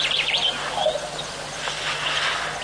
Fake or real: real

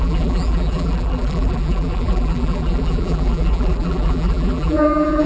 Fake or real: fake